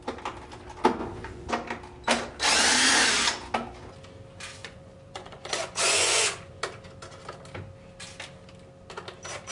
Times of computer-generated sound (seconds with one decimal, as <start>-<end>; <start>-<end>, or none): 1.0-1.5; 4.6-6.6